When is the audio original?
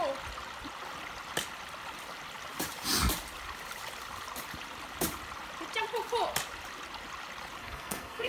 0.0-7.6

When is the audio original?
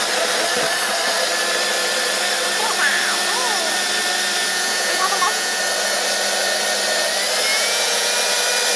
0.0-4.4; 5.6-7.5; 8.1-8.8